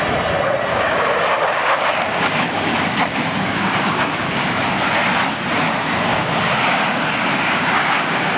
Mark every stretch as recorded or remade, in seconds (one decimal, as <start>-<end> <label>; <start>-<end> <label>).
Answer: 0.0-0.7 recorded; 0.7-4.6 remade; 4.6-6.1 recorded; 6.1-8.4 remade